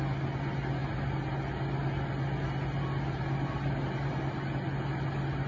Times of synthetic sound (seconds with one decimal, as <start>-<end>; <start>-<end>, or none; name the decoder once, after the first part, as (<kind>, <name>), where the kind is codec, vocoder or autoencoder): none